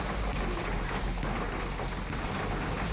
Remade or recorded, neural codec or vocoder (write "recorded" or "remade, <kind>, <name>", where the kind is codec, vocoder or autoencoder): recorded